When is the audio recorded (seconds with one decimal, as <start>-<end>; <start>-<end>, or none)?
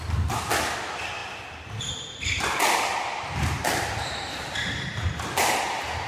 0.0-6.1